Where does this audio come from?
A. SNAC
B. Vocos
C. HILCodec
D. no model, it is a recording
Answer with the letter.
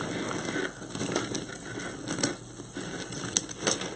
D